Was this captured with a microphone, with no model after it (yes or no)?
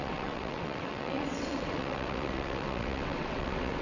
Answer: no